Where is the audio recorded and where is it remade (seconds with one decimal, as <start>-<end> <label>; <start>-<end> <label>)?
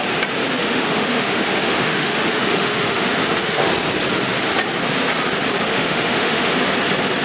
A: 0.0-0.6 recorded; 0.6-3.7 remade; 3.7-5.7 recorded; 5.7-6.5 remade; 6.5-7.2 recorded